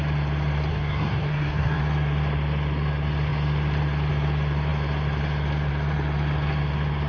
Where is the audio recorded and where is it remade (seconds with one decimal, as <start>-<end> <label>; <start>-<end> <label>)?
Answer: 0.0-0.7 recorded; 0.7-1.8 remade; 1.8-7.1 recorded